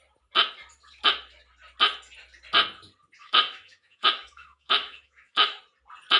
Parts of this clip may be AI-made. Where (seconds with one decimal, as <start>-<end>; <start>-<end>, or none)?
3.2-5.6